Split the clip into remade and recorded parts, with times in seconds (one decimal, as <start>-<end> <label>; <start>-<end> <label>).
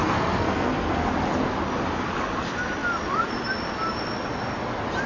0.0-1.1 remade; 1.1-5.1 recorded